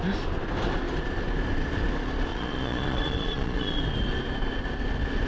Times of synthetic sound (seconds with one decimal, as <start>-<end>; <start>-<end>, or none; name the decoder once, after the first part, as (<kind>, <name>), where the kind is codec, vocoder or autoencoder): 2.3-3.8 (vocoder, Vocos)